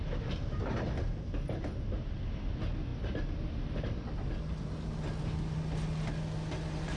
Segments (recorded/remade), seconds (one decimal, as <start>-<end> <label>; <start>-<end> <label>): 0.0-7.0 recorded